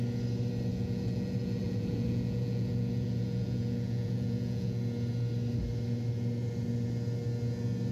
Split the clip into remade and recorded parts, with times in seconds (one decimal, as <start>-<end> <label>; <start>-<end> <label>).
0.0-0.7 recorded; 0.7-4.8 remade; 4.8-7.9 recorded